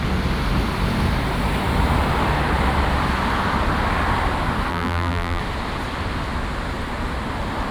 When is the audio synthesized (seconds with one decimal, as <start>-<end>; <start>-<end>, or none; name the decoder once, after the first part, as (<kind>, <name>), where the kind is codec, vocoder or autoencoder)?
4.7-5.4 (vocoder, BigVGAN v2)